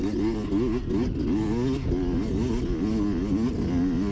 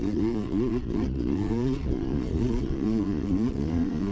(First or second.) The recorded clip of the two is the first